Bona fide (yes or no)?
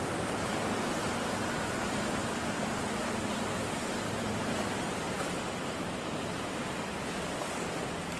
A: yes